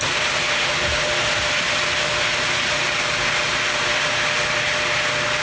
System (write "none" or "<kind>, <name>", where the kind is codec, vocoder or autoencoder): none